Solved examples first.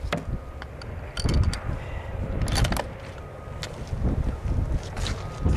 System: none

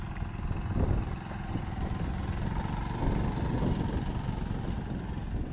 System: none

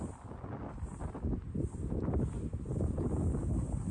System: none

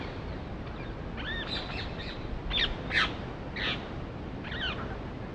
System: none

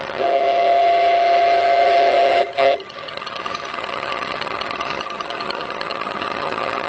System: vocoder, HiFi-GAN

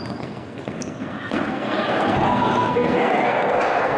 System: codec, SNAC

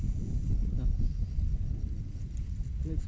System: none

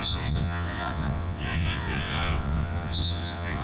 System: vocoder, WaveNeXt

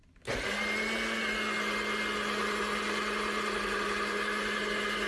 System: none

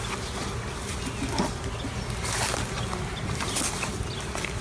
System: none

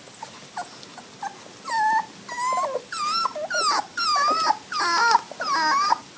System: none